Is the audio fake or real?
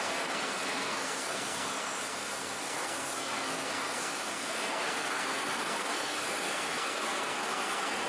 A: fake